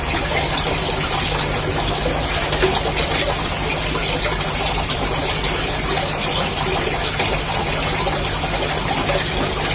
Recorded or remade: recorded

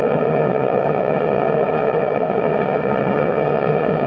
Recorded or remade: remade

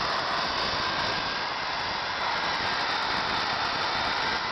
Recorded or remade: recorded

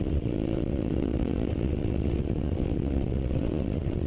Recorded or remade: remade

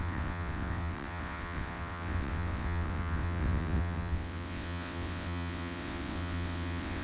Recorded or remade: remade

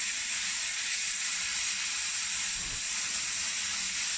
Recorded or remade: recorded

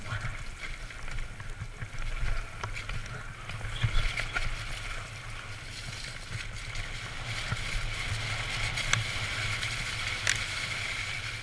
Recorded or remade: recorded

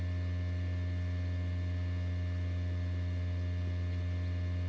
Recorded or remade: recorded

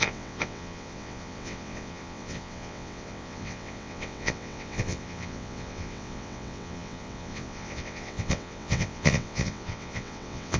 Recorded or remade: remade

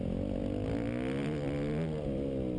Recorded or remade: recorded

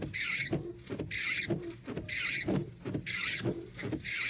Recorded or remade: recorded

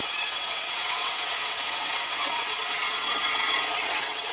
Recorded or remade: remade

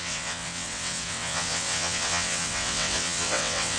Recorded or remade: remade